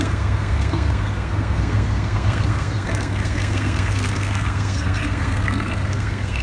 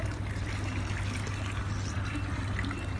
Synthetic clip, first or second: first